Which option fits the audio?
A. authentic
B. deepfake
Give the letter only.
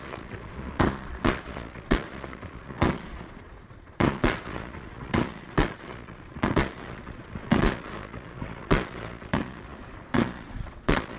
B